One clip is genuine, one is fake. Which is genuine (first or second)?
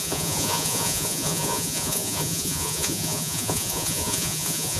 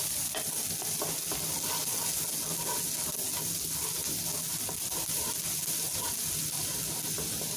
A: second